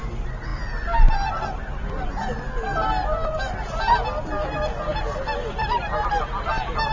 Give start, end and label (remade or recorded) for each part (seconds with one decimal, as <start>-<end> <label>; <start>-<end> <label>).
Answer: 0.0-0.5 recorded; 0.5-1.4 remade; 1.4-4.9 recorded; 4.9-6.2 remade; 6.2-6.9 recorded